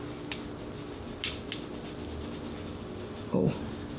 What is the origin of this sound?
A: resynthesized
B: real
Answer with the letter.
B